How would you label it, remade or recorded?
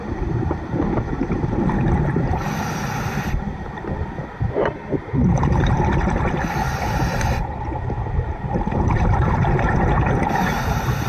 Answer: remade